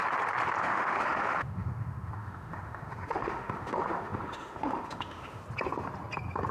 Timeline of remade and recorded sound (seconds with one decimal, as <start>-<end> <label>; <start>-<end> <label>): 0.0-0.6 recorded; 0.6-5.4 remade; 5.4-6.5 recorded